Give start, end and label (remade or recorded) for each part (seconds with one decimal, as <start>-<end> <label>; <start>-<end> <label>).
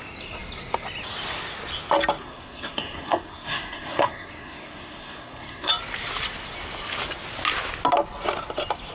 0.0-2.2 recorded; 2.2-5.7 remade; 5.7-8.9 recorded